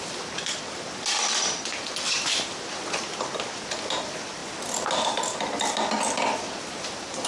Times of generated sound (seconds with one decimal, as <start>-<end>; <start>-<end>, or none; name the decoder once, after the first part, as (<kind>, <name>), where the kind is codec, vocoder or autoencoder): 0.0-4.4 (vocoder, BigVGAN v2); 6.4-7.3